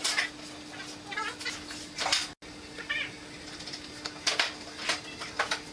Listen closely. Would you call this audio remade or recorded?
recorded